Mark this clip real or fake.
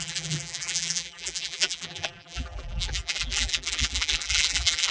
fake